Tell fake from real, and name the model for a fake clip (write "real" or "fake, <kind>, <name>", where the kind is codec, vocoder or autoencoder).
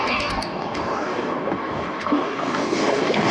fake, codec, DAC